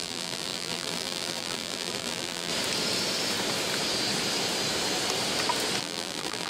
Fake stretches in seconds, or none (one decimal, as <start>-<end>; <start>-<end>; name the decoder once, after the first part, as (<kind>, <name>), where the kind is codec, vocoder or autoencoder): 0.0-2.5 (vocoder, BigVGAN v2); 5.8-6.5